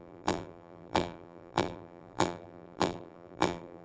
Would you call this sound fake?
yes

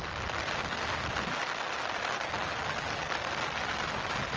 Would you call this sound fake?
no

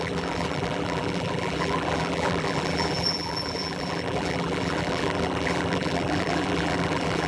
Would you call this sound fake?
yes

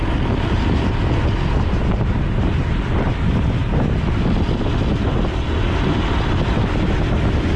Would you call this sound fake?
no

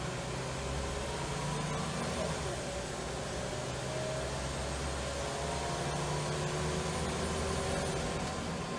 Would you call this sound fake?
no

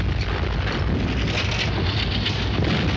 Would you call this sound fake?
no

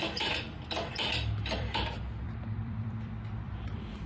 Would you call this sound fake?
yes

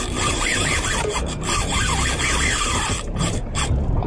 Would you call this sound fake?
yes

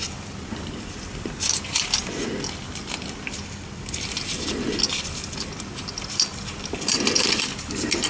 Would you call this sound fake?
no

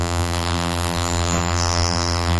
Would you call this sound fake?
yes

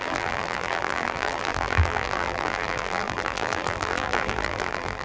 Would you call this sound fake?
yes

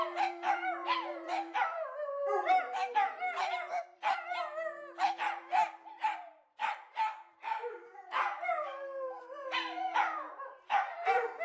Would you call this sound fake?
yes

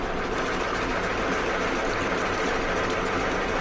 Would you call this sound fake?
no